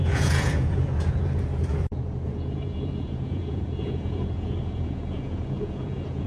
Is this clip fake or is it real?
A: fake